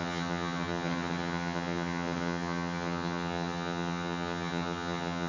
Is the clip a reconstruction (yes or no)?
yes